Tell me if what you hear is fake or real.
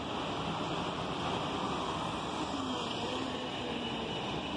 real